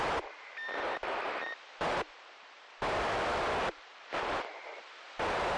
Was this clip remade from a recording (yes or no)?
yes